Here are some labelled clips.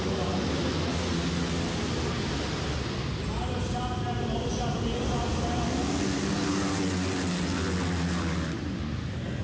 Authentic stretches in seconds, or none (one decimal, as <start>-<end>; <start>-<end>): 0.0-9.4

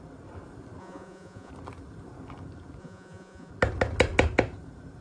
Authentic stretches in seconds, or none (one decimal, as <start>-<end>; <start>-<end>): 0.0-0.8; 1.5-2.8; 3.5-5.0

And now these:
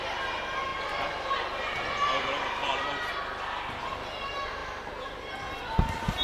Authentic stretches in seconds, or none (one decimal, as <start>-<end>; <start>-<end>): 0.0-6.2

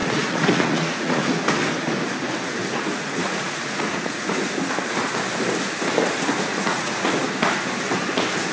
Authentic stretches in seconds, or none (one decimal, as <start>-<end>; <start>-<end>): 1.3-2.6; 4.3-6.5; 7.1-8.5

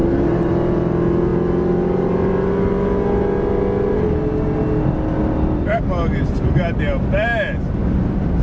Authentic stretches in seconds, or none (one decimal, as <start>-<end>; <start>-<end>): 0.0-8.4